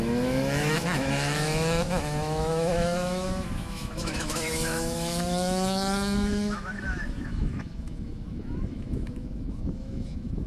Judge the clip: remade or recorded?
remade